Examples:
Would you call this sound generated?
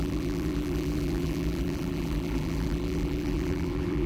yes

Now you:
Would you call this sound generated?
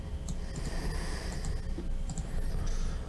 no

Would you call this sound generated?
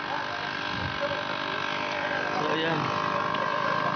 no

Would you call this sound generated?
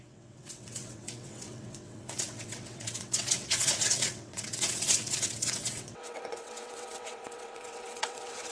yes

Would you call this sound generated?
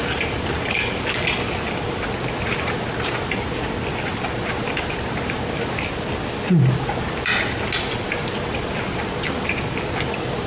no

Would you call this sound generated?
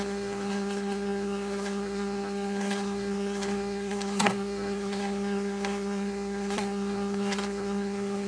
yes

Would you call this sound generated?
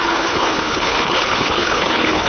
yes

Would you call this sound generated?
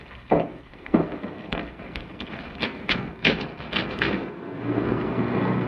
yes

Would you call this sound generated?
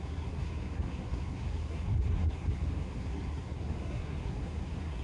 yes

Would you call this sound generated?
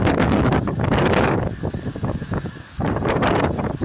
yes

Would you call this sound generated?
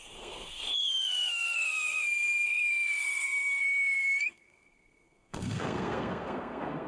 yes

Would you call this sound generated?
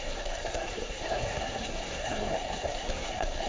yes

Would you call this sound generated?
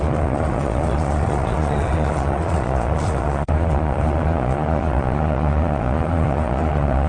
yes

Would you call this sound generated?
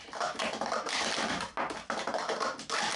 no